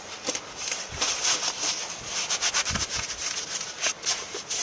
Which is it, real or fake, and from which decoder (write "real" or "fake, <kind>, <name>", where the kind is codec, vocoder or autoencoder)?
real